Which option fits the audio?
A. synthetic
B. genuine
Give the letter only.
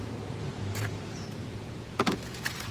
A